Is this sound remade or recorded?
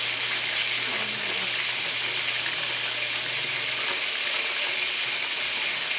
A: recorded